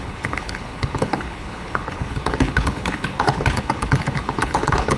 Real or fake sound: fake